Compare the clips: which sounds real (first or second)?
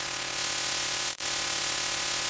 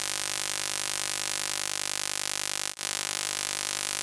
second